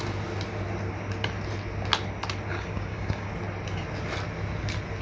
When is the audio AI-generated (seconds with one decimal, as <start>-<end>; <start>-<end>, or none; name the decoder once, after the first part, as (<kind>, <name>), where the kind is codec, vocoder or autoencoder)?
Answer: 2.5-3.3 (codec, DAC)